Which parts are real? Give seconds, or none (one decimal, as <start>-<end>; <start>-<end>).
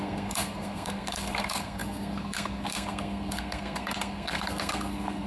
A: none